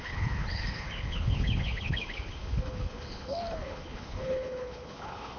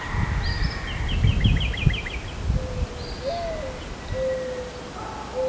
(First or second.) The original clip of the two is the second